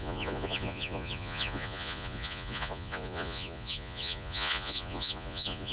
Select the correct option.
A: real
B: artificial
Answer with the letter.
B